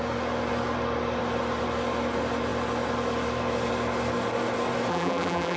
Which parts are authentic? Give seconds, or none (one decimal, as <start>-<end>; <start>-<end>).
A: 0.0-4.9